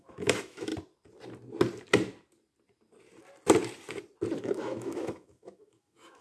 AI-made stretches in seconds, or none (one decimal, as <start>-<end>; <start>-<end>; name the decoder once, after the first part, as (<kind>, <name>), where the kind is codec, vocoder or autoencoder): 0.0-0.7 (autoencoder, DAC-VAE); 4.4-6.2